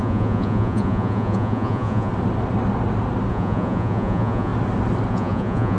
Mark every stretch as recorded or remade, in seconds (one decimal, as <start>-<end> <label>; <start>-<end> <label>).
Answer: 0.0-2.1 remade; 2.1-3.3 recorded; 3.3-4.5 remade; 4.5-5.1 recorded; 5.1-5.8 remade